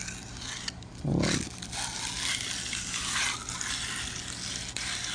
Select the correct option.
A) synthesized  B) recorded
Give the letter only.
B